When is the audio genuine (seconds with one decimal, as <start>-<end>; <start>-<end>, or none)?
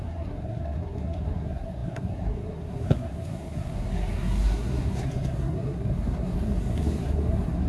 none